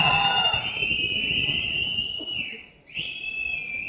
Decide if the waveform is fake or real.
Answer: real